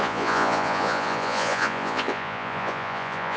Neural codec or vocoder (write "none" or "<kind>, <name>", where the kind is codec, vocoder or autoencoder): vocoder, Vocos